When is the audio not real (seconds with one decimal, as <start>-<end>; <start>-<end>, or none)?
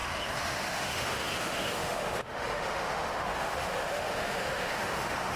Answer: 0.0-5.4